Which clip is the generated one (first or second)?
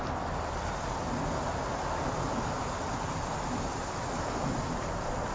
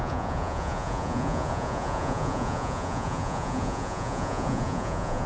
second